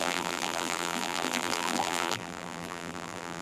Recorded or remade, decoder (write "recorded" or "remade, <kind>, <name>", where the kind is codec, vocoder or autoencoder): remade, vocoder, BigVGAN v2